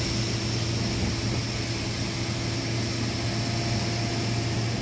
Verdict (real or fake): real